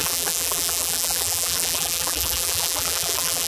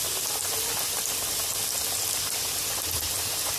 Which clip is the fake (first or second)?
first